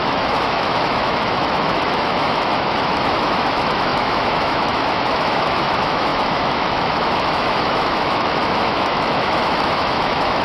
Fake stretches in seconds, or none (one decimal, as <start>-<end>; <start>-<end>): 0.0-10.4